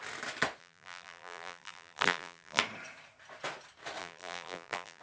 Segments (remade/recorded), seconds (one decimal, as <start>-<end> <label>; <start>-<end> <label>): 0.0-0.6 recorded; 0.6-2.6 remade; 2.6-4.0 recorded; 4.0-5.0 remade